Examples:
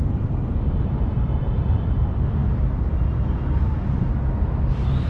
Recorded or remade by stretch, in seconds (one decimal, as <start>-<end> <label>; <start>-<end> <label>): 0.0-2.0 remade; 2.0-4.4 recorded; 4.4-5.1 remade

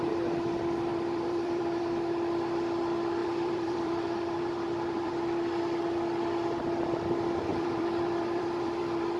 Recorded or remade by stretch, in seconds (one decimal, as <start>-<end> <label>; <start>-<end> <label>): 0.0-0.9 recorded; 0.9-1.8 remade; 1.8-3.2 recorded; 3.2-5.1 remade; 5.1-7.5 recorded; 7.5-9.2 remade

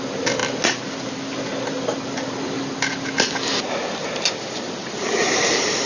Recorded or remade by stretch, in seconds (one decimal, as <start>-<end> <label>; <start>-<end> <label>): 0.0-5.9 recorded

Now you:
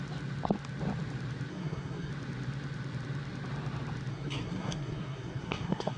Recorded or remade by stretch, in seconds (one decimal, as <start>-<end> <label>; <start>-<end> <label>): 0.0-1.5 recorded; 1.5-2.1 remade; 2.1-4.1 recorded; 4.1-6.0 remade

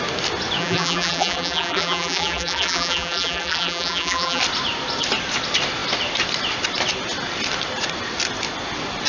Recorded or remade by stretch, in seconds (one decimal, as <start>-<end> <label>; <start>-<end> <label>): 0.0-0.6 recorded; 0.6-4.4 remade; 4.4-9.1 recorded